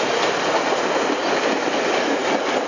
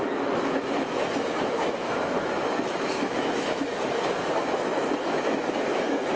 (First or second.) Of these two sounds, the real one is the first